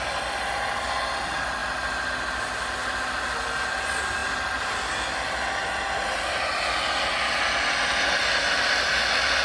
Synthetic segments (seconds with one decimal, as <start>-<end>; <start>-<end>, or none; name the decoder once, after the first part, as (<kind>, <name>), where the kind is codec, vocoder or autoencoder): none